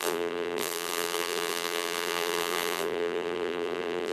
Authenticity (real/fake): fake